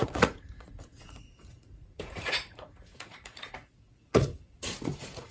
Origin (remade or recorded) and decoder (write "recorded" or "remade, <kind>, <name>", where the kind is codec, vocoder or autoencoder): remade, vocoder, Vocos